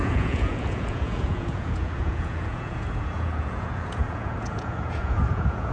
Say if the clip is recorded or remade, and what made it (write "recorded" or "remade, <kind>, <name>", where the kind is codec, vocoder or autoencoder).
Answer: remade, vocoder, Vocos